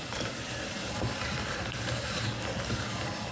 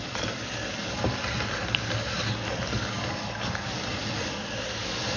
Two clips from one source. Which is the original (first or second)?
second